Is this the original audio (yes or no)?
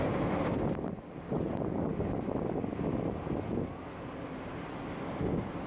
yes